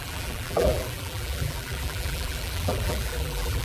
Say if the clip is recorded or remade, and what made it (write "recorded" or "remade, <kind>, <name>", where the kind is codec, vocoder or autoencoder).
remade, vocoder, BigVGAN v2